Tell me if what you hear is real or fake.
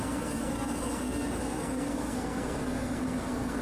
fake